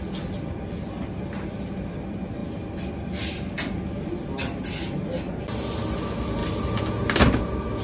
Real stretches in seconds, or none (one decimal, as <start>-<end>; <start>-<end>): 0.0-7.8